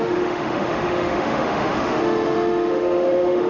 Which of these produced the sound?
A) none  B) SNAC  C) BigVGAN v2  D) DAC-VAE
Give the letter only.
D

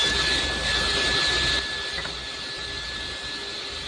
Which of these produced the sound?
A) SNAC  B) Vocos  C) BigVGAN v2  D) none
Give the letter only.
D